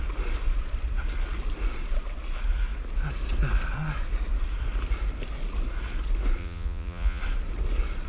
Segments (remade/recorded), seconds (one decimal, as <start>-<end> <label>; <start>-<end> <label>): 0.0-6.4 recorded; 6.4-7.2 remade; 7.2-8.1 recorded